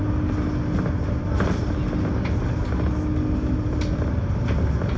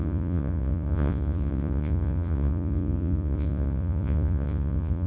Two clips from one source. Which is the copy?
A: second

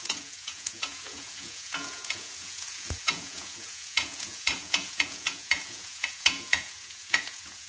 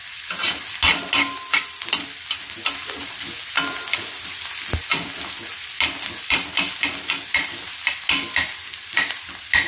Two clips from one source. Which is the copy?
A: first